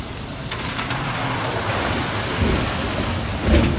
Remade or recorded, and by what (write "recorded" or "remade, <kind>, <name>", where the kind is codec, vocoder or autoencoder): recorded